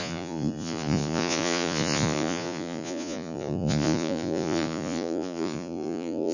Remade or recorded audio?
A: remade